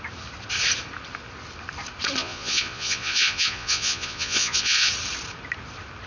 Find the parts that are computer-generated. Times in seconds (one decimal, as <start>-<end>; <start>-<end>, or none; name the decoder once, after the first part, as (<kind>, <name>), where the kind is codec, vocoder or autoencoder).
2.2-4.9 (vocoder, Vocos)